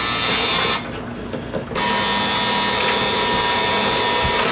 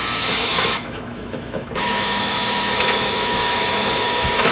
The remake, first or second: second